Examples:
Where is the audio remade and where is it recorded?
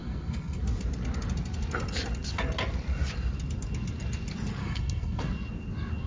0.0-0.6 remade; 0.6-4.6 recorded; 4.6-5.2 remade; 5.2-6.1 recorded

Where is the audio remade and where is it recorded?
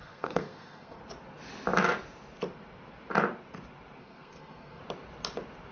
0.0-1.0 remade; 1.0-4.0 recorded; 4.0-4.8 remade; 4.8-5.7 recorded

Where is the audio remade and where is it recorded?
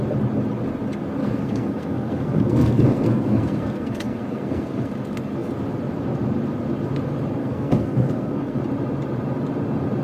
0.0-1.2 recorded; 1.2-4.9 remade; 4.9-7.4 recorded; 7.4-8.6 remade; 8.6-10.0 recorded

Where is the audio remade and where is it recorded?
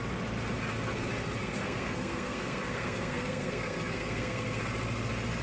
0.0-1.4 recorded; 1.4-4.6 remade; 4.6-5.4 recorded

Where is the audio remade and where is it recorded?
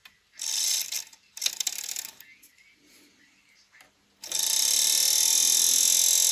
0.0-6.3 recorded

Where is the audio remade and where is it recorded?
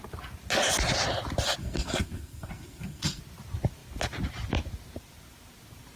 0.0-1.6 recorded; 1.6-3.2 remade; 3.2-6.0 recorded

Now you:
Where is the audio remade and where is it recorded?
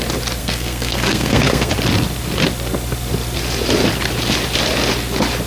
0.0-0.4 recorded; 0.4-1.7 remade; 1.7-5.5 recorded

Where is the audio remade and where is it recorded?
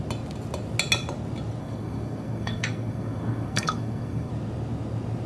0.0-1.6 recorded; 1.6-4.3 remade; 4.3-5.3 recorded